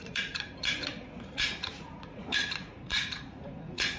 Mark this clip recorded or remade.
remade